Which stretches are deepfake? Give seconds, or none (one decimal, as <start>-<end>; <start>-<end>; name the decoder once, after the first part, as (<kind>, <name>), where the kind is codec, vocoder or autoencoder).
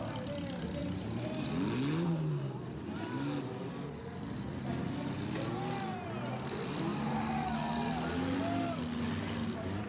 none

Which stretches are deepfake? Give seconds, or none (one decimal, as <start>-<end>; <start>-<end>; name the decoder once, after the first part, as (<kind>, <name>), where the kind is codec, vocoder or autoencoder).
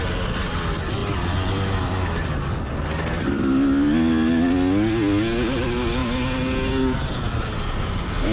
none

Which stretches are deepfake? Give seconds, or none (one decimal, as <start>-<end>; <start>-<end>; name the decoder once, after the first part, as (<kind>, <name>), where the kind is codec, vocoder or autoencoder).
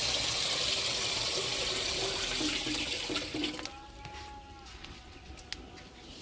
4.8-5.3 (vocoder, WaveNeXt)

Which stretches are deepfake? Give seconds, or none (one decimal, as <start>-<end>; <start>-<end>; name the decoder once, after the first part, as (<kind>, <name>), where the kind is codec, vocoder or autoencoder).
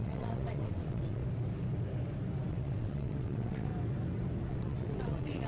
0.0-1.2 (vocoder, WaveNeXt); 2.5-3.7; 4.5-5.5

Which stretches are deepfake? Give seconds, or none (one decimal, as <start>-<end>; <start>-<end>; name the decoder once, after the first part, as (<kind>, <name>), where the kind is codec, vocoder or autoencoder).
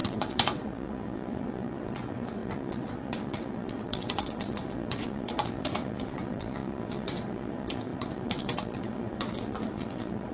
0.0-10.3 (vocoder, WaveNeXt)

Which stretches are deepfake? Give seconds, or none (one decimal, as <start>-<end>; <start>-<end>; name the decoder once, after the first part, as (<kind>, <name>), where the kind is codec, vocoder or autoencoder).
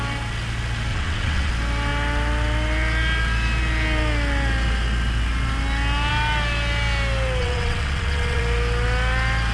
0.9-1.5 (vocoder, WaveNeXt); 7.4-8.4